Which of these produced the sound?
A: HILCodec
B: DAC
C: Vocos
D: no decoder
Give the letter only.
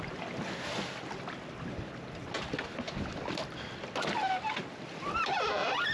D